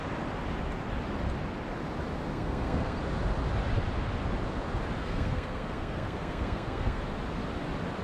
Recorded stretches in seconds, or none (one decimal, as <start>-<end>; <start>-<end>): 0.0-2.3; 3.0-5.0; 7.0-8.0